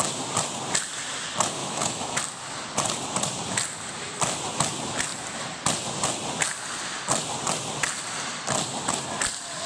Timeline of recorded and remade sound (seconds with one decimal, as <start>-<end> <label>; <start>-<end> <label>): 0.0-1.6 recorded; 1.6-2.2 remade; 2.2-9.7 recorded